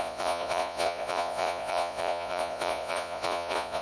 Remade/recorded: remade